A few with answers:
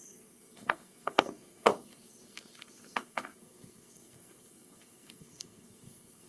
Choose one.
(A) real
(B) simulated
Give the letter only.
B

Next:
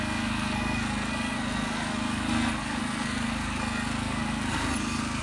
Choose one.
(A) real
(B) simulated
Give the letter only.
B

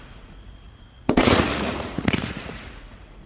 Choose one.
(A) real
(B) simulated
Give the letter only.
B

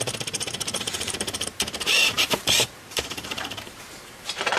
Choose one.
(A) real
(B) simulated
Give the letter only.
B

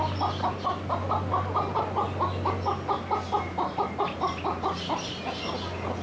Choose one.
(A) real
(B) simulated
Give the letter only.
A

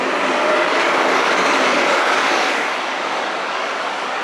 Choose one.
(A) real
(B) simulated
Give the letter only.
B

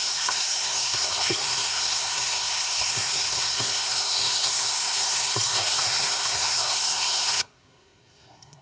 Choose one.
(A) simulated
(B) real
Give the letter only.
A